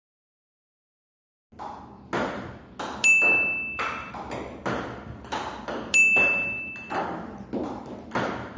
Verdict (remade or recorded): recorded